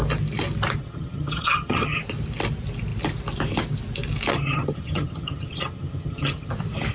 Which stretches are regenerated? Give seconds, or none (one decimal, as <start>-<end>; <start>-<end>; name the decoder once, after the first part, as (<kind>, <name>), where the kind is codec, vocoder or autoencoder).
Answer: 0.8-2.0 (vocoder, HiFi-GAN); 4.3-6.5